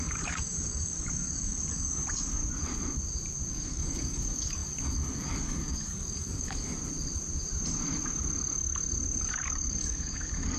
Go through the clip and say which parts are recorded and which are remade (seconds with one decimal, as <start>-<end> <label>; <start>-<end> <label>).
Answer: 0.0-2.4 remade; 2.4-3.5 recorded; 3.5-6.8 remade; 6.8-9.2 recorded; 9.2-10.6 remade